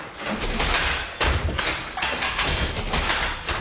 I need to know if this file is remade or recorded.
recorded